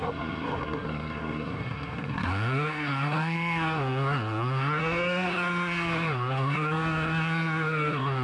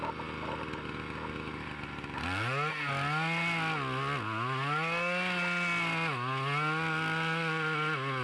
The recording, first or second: second